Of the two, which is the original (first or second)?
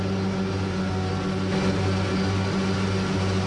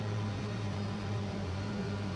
first